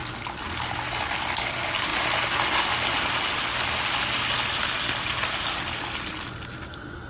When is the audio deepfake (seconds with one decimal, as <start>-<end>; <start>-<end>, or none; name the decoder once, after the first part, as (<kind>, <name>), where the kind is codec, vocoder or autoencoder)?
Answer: none